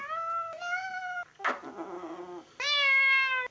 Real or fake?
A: real